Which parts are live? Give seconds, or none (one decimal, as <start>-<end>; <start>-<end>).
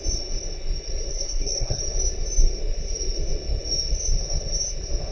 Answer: 0.0-1.1; 1.8-5.1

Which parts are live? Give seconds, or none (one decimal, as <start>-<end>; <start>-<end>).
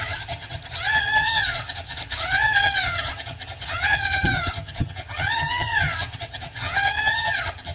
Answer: none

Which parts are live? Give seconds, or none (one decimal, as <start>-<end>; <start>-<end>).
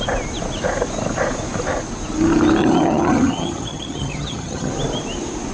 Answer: 0.0-2.6; 4.7-5.5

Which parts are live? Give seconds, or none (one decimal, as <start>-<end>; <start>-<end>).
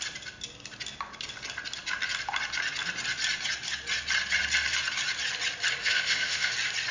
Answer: 0.0-5.8; 6.5-6.9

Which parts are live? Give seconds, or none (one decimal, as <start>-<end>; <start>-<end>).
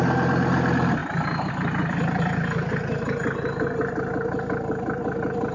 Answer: 0.0-5.5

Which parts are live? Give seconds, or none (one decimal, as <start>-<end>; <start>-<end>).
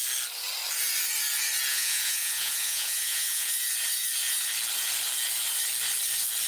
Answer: 0.0-1.7; 3.5-6.5